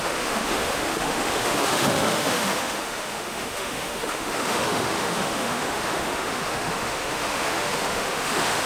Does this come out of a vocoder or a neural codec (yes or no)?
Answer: yes